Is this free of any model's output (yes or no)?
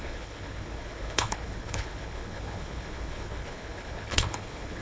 no